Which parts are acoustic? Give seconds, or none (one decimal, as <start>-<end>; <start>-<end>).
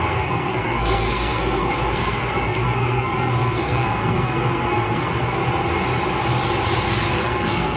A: 5.4-7.1